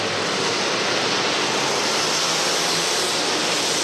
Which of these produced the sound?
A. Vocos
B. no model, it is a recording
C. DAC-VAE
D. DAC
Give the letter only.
B